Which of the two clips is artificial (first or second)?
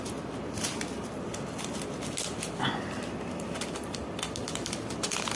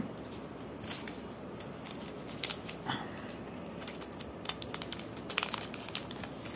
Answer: first